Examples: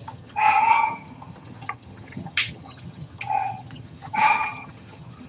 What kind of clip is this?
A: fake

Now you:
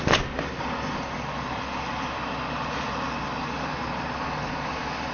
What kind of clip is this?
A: real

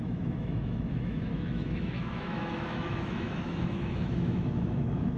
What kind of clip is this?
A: fake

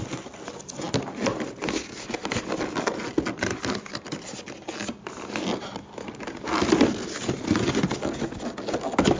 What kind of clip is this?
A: real